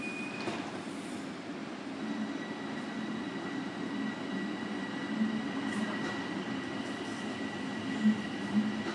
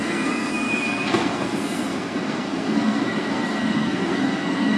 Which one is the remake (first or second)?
second